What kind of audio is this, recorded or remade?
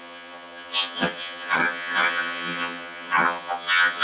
remade